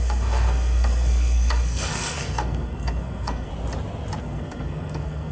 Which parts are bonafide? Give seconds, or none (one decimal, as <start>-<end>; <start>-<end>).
3.5-4.2